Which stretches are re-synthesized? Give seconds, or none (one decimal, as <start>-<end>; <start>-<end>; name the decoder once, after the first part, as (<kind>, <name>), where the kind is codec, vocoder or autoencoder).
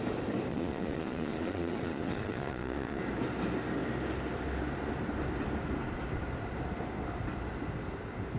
0.5-3.0 (vocoder, Vocos)